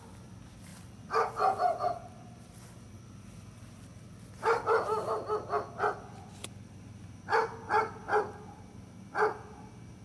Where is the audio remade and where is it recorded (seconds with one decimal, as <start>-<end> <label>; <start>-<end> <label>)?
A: 0.0-10.0 recorded